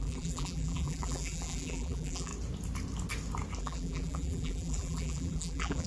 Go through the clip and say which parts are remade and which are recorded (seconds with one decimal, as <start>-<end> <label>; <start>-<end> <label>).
0.0-2.3 remade; 2.3-3.6 recorded; 3.6-5.9 remade